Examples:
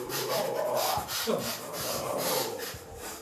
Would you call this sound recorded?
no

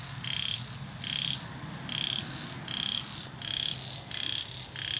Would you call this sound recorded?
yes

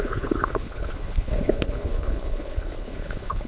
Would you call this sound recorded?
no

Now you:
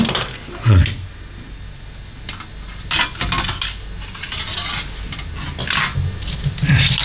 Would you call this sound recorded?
yes